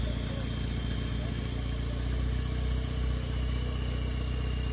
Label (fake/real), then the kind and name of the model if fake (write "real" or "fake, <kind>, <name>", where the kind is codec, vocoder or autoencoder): real